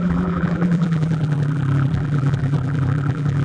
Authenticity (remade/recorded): remade